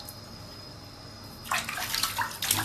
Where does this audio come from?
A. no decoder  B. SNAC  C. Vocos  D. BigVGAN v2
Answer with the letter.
A